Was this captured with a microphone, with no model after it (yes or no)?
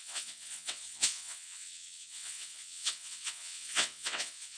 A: no